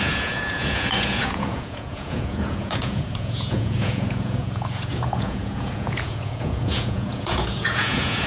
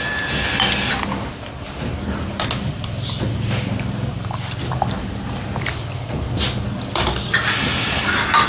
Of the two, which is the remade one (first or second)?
first